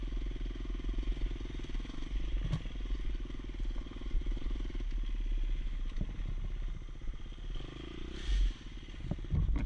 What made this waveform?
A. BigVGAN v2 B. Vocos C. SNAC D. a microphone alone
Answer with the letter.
D